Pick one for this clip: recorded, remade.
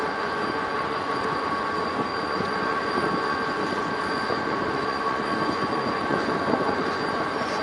remade